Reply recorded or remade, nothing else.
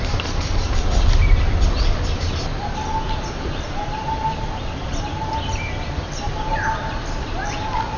recorded